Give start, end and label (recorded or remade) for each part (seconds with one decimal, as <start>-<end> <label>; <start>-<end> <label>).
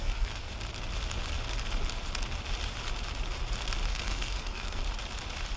0.0-0.5 remade; 0.5-3.9 recorded; 3.9-4.8 remade; 4.8-5.6 recorded